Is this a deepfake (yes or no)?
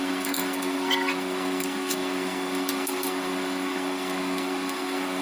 yes